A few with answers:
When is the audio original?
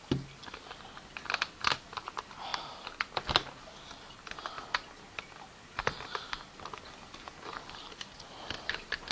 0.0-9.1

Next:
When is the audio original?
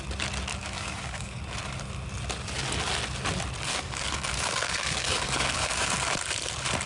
0.0-0.5; 1.4-3.7; 6.1-6.9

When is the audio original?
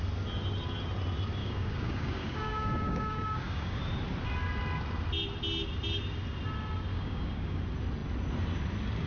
0.0-1.4; 3.8-6.9; 7.6-9.1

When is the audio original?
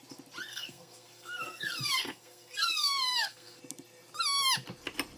0.0-0.5; 3.6-5.2